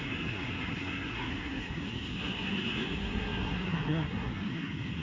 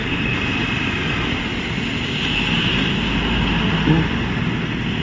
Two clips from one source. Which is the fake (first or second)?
first